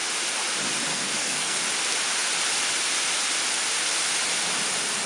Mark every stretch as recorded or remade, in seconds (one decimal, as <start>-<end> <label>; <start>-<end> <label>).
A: 0.0-0.9 recorded; 0.9-1.6 remade; 1.6-5.1 recorded